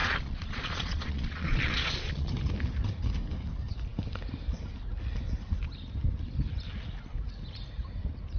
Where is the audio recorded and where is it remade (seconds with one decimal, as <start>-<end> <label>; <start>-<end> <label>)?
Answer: 0.0-2.3 remade; 2.3-8.4 recorded

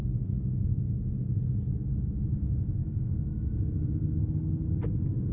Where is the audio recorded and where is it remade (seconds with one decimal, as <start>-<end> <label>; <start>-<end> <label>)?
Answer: 0.0-0.8 remade; 0.8-2.8 recorded; 2.8-3.5 remade; 3.5-5.3 recorded

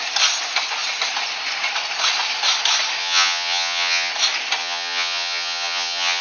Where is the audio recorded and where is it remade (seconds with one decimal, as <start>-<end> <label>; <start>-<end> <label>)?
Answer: 0.0-3.0 recorded; 3.0-4.1 remade; 4.1-4.6 recorded; 4.6-6.2 remade

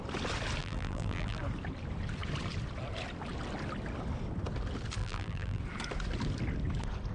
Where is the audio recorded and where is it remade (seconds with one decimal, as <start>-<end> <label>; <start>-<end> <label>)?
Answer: 0.0-0.6 recorded; 0.6-1.4 remade; 1.4-5.0 recorded; 5.0-5.6 remade; 5.6-7.1 recorded